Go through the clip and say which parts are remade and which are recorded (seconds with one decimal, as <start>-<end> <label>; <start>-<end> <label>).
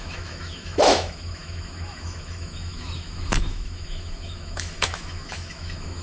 0.0-6.0 remade